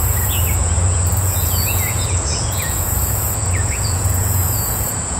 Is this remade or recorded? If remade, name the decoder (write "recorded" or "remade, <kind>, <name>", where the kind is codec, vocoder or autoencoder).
remade, vocoder, Vocos